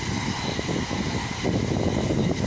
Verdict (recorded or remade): recorded